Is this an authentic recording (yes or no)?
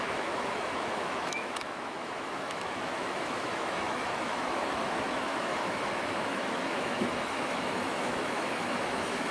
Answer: no